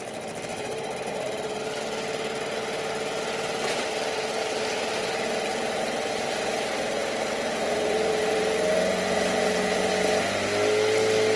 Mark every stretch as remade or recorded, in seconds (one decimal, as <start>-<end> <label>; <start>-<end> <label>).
0.0-0.5 recorded; 0.5-1.6 remade; 1.6-5.5 recorded; 5.5-9.9 remade; 9.9-11.4 recorded